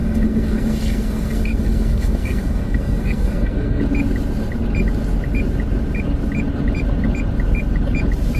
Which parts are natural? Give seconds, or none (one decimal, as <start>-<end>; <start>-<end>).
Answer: 3.8-8.4